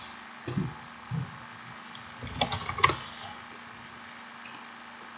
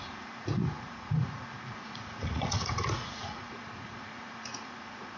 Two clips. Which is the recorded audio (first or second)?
first